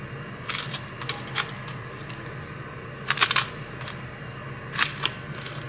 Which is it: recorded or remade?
recorded